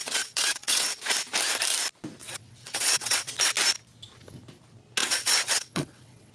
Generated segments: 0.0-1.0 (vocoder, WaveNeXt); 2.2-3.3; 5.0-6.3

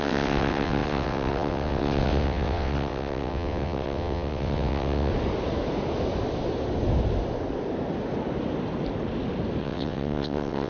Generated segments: 0.0-5.1 (vocoder, WaveNeXt); 9.6-10.7

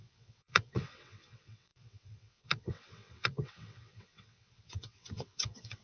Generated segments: 0.0-5.8 (vocoder, WaveNeXt)

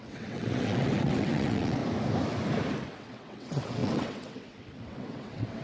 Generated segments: 0.0-1.8 (vocoder, WaveNeXt); 2.8-5.6

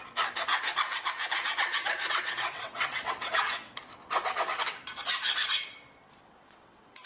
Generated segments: 1.8-3.8 (vocoder, WaveNeXt); 5.4-7.1

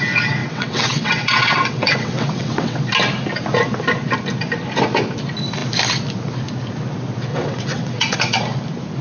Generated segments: 0.4-2.8 (vocoder, WaveNeXt); 7.3-8.4

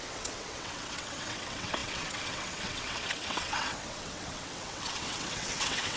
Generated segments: 0.0-6.0 (vocoder, WaveNeXt)